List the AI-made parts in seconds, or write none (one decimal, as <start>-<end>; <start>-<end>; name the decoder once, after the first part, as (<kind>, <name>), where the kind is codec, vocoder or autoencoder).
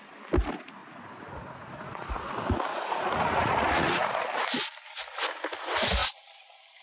0.8-2.3 (vocoder, Vocos); 2.7-4.2